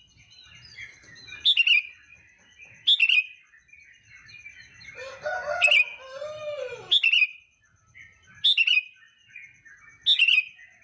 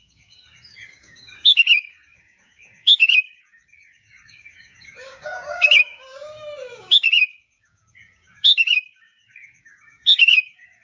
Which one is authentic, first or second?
first